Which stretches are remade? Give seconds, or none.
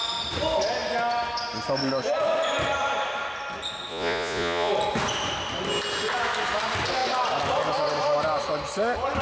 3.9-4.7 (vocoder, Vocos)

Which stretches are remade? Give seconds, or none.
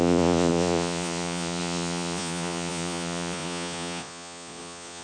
0.0-5.0 (vocoder, Vocos)